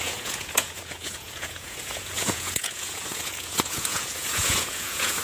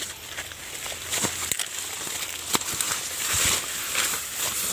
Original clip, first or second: second